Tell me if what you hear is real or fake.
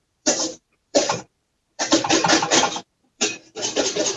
fake